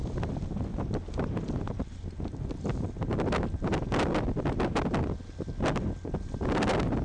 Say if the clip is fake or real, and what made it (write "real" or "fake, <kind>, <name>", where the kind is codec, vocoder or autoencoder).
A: real